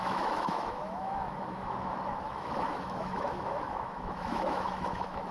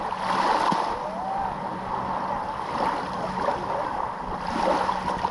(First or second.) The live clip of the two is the second